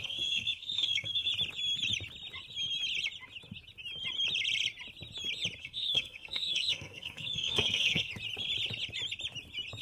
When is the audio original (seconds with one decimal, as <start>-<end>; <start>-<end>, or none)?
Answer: 1.3-5.6; 8.1-9.8